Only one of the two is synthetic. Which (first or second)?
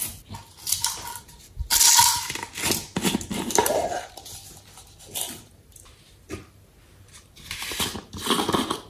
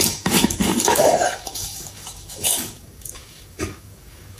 second